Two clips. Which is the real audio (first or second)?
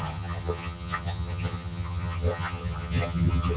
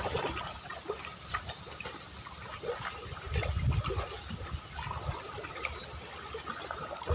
second